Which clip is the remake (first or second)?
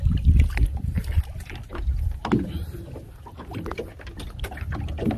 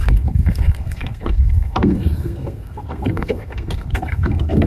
second